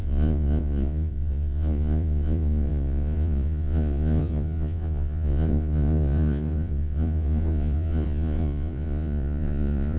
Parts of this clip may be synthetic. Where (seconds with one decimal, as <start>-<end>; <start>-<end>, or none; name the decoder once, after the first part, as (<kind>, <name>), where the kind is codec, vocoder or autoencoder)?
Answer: 0.0-10.0 (vocoder, Vocos)